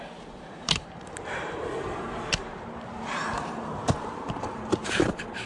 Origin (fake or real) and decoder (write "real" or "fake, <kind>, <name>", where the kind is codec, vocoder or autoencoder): fake, vocoder, BigVGAN v2